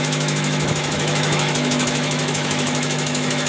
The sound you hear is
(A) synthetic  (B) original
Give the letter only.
A